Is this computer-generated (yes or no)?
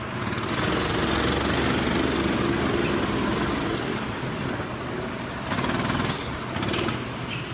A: no